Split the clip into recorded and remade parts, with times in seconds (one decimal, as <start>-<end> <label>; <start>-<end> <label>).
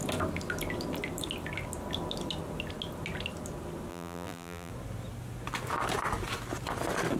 0.0-3.9 recorded; 3.9-4.7 remade; 4.7-7.2 recorded